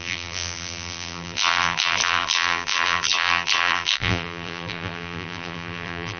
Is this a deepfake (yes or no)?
yes